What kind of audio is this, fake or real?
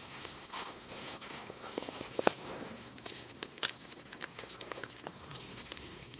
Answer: fake